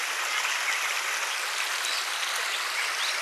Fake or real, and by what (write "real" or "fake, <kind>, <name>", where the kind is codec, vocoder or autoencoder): real